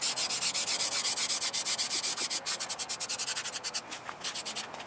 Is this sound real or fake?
real